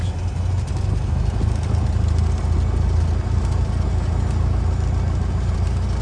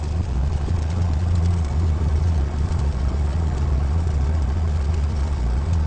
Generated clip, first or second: second